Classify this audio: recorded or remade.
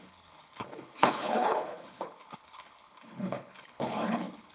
remade